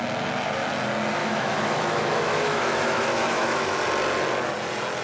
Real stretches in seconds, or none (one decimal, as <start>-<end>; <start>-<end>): 0.0-1.2; 3.8-5.0